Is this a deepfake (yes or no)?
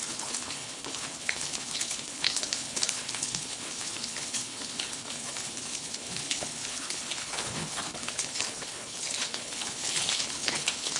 yes